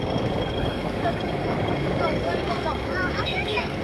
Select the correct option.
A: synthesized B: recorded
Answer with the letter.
A